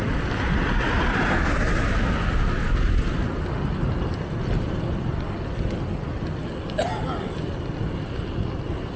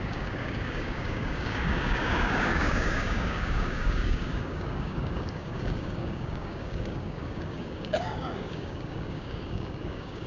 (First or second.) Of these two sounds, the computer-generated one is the second